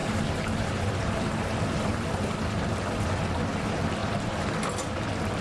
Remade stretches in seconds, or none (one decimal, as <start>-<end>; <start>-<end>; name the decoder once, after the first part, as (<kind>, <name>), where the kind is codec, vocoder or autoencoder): 0.0-3.2 (vocoder, BigVGAN v2); 4.0-4.5